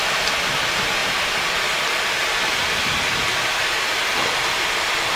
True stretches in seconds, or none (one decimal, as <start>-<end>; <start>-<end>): 0.0-5.2